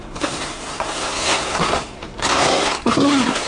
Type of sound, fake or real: fake